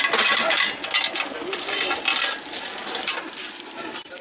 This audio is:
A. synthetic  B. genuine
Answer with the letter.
B